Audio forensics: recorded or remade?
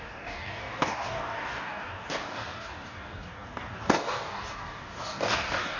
remade